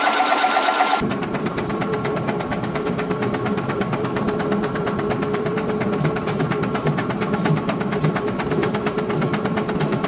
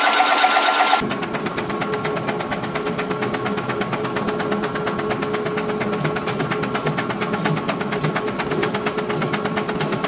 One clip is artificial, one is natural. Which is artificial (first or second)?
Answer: first